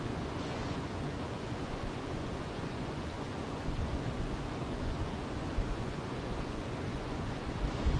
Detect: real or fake fake